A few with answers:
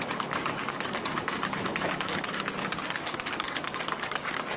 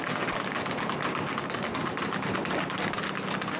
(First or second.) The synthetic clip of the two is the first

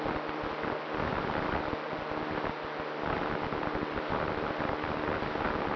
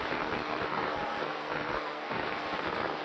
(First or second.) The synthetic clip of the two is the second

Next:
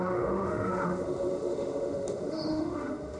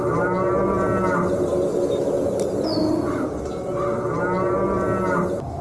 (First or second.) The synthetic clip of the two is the first